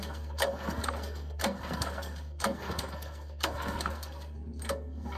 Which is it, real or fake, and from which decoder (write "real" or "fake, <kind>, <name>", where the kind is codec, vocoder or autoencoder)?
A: fake, codec, SNAC